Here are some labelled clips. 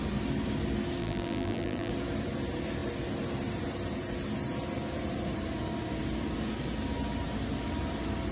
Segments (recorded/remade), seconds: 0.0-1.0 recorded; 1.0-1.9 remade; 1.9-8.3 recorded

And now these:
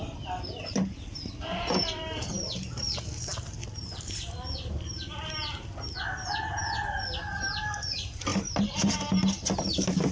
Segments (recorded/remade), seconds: 0.0-8.3 recorded; 8.3-8.8 remade; 8.8-10.1 recorded

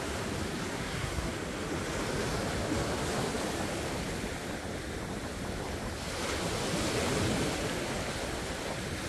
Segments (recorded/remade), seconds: 0.0-0.7 recorded; 0.7-1.3 remade; 1.3-9.1 recorded

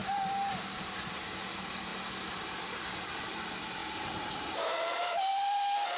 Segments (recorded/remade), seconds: 0.0-1.2 remade; 1.2-3.8 recorded; 3.8-5.3 remade; 5.3-6.0 recorded

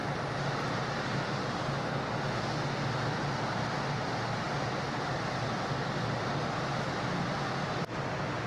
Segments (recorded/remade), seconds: 0.0-8.5 recorded